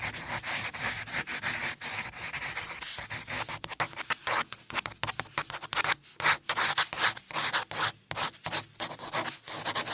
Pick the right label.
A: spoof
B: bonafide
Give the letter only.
B